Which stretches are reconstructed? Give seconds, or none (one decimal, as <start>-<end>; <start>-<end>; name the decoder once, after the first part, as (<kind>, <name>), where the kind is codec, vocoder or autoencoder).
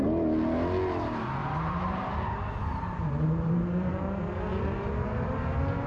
1.4-2.1 (vocoder, BigVGAN v2); 2.6-3.9